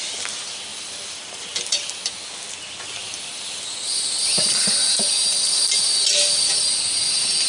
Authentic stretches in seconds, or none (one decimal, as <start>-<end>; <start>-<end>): 0.0-0.7; 2.1-3.0; 6.7-7.5